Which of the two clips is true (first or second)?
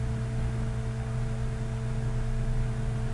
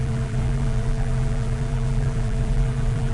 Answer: first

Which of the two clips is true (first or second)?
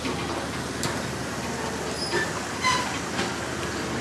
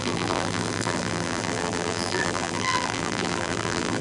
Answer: first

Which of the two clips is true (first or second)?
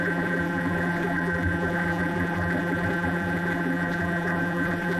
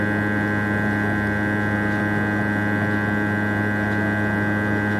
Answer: second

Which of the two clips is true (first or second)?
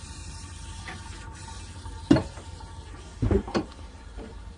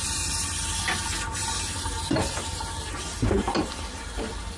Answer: second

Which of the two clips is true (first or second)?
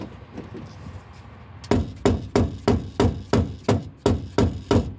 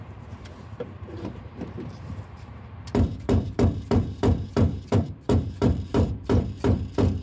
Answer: first